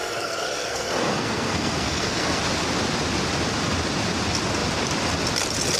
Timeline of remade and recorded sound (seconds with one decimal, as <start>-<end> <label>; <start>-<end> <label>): 0.0-2.4 remade; 2.4-5.8 recorded